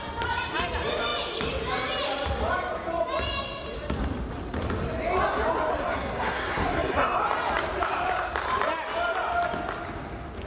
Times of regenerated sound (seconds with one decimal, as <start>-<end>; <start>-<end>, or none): 5.7-7.2